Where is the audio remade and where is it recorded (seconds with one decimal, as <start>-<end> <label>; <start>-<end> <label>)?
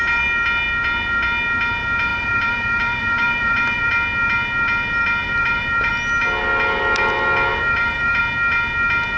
0.0-2.1 recorded; 2.1-3.9 remade; 3.9-5.2 recorded; 5.2-5.9 remade; 5.9-7.5 recorded; 7.5-8.2 remade; 8.2-9.2 recorded